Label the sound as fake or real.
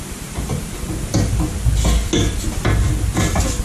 real